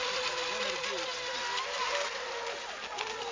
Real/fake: real